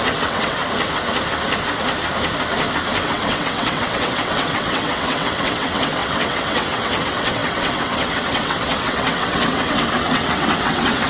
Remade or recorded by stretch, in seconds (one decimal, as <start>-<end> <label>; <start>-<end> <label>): 0.0-0.6 remade; 0.6-3.0 recorded; 3.0-11.1 remade